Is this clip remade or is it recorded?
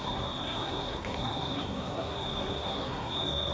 remade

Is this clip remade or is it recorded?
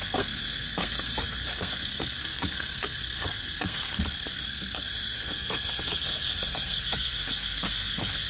remade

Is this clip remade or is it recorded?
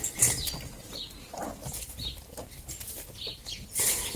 recorded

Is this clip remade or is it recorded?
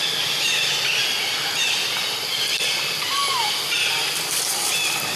recorded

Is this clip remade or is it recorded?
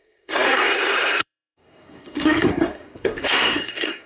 remade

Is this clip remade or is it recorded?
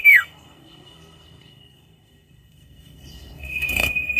remade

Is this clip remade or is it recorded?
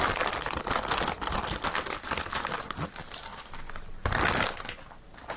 recorded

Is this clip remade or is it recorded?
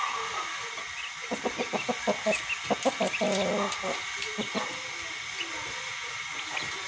recorded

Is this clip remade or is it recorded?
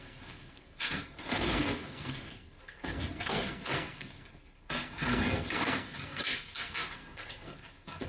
remade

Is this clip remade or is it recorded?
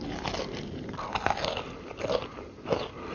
recorded